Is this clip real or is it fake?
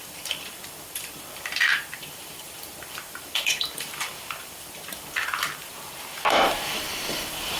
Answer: fake